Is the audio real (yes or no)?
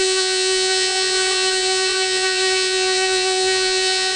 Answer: no